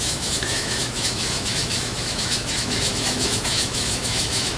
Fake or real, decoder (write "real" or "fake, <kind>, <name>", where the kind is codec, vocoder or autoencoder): fake, autoencoder, DAC-VAE